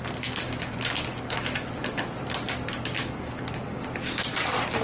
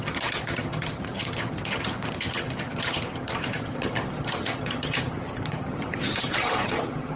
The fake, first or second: second